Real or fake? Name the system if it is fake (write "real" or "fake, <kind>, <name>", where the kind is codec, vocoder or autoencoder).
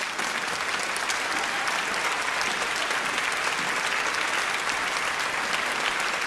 real